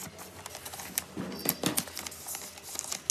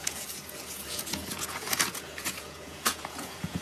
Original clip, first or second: first